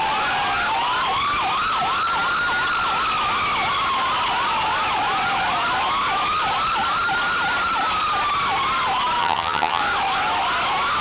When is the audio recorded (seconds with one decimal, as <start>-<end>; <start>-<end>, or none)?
0.0-9.2; 9.8-11.0